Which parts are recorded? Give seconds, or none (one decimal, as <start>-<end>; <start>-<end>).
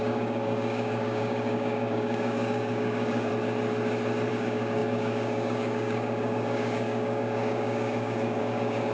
3.3-4.3